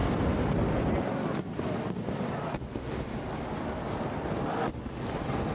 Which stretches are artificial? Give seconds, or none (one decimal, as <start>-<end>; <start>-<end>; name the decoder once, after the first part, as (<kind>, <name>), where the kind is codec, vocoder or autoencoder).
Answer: none